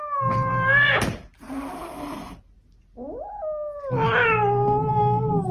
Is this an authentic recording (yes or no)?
yes